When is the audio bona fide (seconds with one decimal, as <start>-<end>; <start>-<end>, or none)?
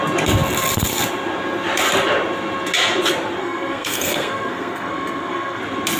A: 0.0-3.4; 5.6-6.0